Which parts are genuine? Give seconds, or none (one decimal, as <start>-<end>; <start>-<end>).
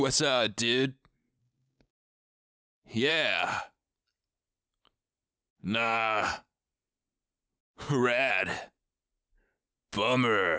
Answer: 0.0-1.4; 3.1-5.5; 6.3-7.6; 8.3-10.6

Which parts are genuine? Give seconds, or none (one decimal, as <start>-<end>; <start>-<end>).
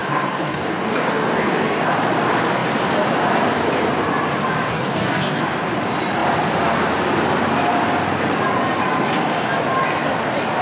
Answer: 1.6-4.7; 5.4-10.6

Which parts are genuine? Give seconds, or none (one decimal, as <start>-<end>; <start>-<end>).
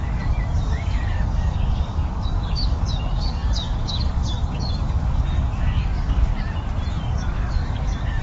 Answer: 6.3-6.9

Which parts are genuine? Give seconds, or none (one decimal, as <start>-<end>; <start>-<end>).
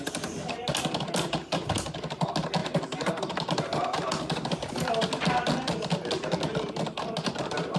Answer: 0.0-7.8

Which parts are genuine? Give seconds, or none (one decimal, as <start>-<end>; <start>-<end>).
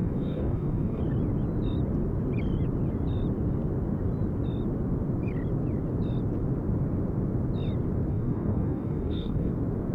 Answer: 1.0-8.1; 9.5-9.9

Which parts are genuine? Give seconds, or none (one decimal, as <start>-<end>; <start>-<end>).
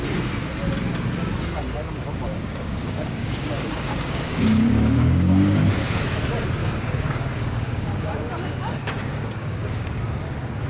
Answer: 0.0-2.3; 6.1-6.6; 10.0-10.7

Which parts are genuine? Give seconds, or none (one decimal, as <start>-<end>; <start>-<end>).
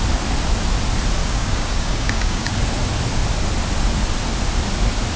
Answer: 0.0-1.2; 2.6-5.2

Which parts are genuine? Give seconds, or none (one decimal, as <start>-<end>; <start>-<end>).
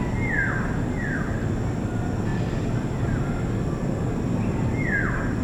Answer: 0.0-5.4